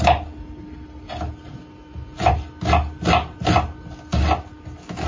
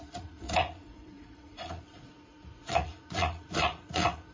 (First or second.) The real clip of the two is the first